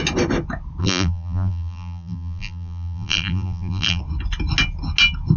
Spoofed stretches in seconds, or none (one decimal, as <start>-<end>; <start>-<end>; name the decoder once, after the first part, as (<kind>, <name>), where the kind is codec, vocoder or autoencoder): 0.8-4.0 (vocoder, BigVGAN v2)